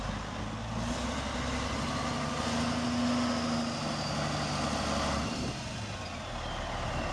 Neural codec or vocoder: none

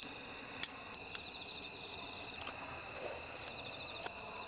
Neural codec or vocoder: none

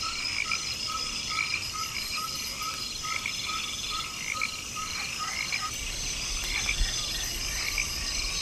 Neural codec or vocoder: none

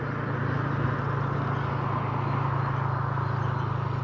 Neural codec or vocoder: none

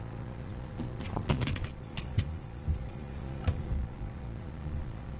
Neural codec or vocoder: vocoder, Vocos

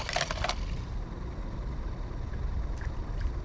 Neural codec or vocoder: none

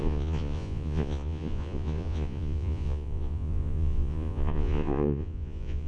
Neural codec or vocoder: vocoder, Vocos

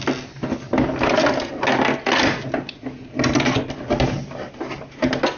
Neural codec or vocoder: none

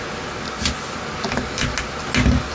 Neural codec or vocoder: none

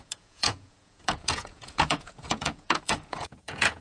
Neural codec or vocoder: vocoder, Vocos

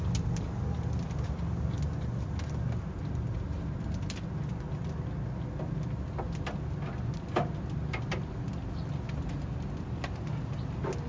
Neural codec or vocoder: none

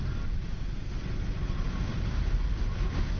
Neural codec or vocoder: none